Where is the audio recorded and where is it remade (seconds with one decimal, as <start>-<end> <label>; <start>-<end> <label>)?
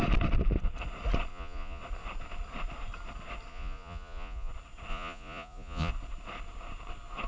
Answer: 0.0-1.3 recorded; 1.3-1.8 remade; 1.8-3.5 recorded; 3.5-4.5 remade; 4.5-4.9 recorded; 4.9-5.9 remade; 5.9-7.3 recorded